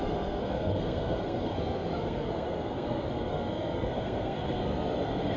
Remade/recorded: remade